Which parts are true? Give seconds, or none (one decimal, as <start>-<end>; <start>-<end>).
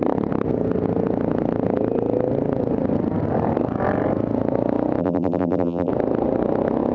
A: 0.0-5.0; 5.9-6.9